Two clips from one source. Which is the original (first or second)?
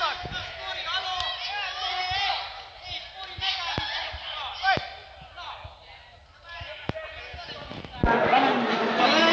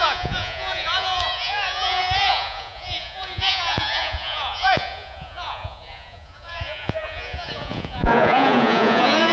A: first